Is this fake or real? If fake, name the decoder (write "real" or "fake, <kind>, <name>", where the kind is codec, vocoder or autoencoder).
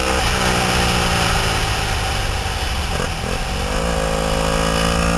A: real